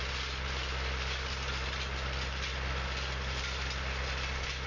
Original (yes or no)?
yes